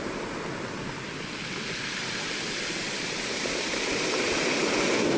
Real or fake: real